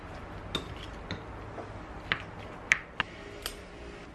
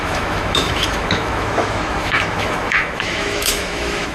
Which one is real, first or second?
first